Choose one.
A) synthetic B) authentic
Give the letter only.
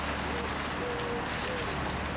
B